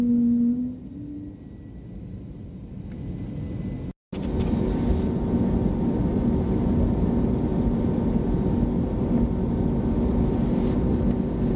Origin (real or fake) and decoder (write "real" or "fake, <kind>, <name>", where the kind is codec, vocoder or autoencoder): real